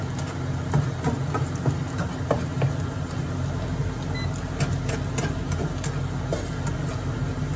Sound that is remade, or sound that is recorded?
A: recorded